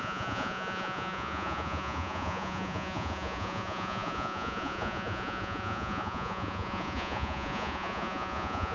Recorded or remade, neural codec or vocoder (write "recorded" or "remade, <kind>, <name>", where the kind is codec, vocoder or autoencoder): remade, vocoder, Vocos